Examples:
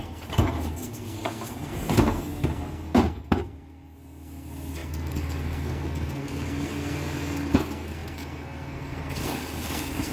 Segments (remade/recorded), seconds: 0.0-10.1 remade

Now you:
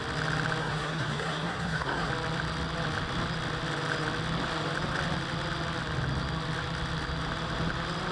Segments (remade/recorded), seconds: 0.0-0.6 recorded; 0.6-2.1 remade; 2.1-8.1 recorded

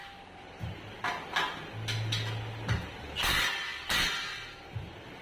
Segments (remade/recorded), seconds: 0.0-5.2 recorded

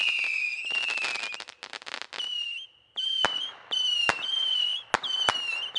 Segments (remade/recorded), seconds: 0.0-5.8 recorded